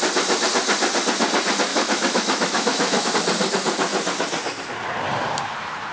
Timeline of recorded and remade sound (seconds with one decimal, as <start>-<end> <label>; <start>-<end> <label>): 0.0-1.7 recorded; 1.7-3.1 remade; 3.1-5.9 recorded